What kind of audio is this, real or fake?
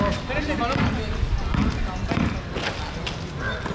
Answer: real